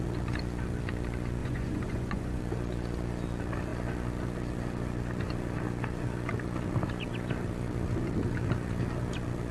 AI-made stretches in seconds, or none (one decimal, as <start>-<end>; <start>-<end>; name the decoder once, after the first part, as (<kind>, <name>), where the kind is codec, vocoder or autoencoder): 1.4-2.4 (vocoder, Vocos)

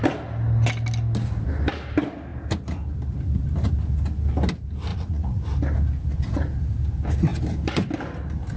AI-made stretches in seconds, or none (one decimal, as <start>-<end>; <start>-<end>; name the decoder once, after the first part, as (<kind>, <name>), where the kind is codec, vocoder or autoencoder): 4.9-5.4 (vocoder, Vocos)

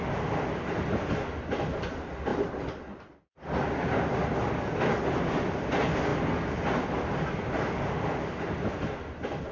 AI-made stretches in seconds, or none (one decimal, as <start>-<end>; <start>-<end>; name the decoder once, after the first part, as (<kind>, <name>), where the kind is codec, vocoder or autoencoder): none

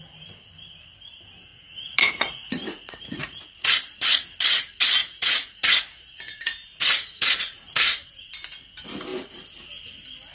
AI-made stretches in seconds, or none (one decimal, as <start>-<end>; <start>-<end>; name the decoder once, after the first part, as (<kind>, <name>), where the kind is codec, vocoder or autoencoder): 1.5-3.7 (vocoder, Vocos); 5.0-8.6

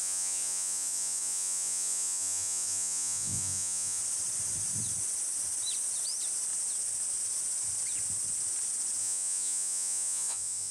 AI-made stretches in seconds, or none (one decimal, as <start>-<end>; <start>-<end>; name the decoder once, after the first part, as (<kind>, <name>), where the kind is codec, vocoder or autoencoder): 0.0-4.0 (vocoder, Vocos); 9.0-10.7

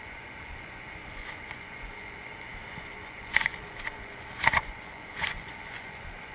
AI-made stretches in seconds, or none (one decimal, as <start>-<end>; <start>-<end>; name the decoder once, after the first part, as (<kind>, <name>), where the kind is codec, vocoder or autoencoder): 0.0-6.3 (vocoder, Vocos)

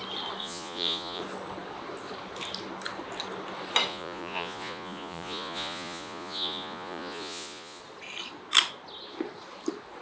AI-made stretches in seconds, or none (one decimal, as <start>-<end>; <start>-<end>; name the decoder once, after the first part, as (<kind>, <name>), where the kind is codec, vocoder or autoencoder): 0.4-1.2 (vocoder, Vocos); 3.9-7.8

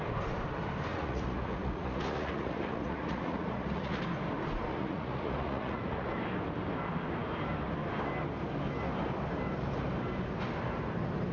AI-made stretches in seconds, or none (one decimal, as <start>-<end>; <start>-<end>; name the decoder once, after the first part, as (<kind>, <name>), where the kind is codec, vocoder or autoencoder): 0.9-4.0 (vocoder, Vocos); 4.7-6.1